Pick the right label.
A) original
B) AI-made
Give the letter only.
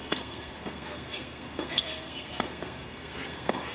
B